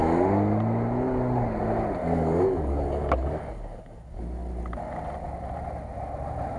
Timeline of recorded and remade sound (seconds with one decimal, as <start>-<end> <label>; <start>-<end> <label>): 0.0-2.0 recorded; 2.0-4.2 remade; 4.2-6.6 recorded